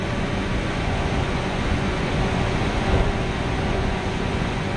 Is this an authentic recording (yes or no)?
no